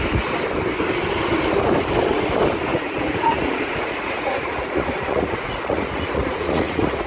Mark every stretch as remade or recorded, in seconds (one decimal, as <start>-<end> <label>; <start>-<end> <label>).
0.0-2.7 recorded; 2.7-7.1 remade